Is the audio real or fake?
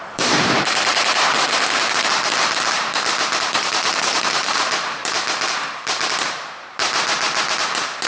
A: fake